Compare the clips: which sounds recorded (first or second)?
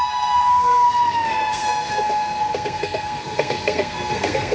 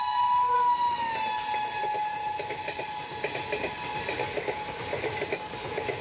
second